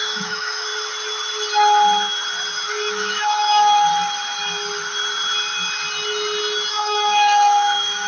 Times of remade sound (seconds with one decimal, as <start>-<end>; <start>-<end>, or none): 0.0-0.7; 2.7-3.9; 6.7-8.1